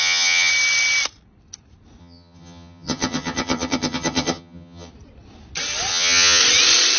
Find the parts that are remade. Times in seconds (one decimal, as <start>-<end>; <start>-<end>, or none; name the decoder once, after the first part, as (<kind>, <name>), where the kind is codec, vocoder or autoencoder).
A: 0.0-0.5 (vocoder, HiFi-GAN); 2.0-4.9; 5.9-6.4

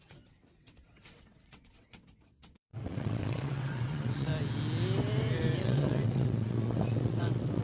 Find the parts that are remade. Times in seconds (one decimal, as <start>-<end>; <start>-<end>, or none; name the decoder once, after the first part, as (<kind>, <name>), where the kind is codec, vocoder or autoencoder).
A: 0.0-4.3 (vocoder, WaveNeXt); 5.6-7.6

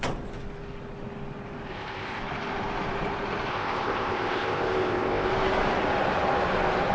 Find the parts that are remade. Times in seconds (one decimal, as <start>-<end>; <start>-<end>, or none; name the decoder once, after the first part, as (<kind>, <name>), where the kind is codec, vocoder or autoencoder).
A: 1.7-2.2 (codec, ZipCodec); 3.5-5.3